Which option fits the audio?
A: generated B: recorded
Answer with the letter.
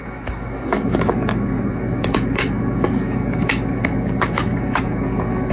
A